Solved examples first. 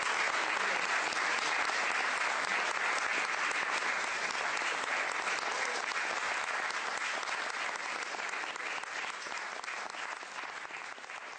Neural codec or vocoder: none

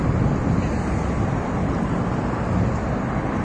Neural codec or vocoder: none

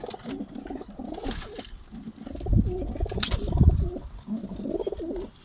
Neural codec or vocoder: none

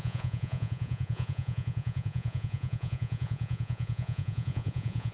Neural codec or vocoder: vocoder, Vocos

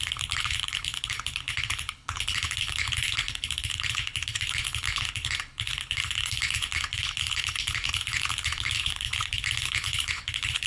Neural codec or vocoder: codec, HILCodec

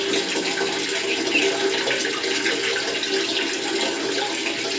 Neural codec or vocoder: none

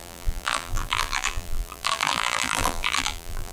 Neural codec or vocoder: vocoder, BigVGAN v2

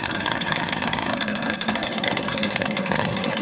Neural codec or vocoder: codec, SNAC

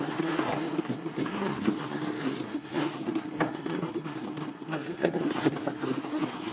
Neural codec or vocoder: codec, SNAC